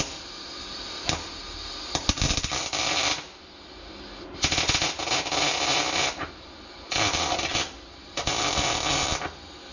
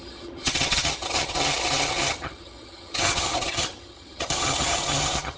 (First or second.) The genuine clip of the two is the first